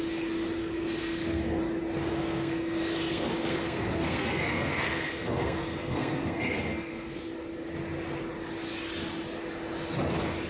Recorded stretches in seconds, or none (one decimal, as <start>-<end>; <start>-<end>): 0.0-0.6; 1.6-2.1; 7.2-10.5